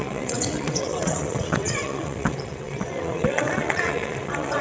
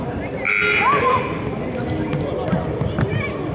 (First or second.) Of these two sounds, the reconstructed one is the first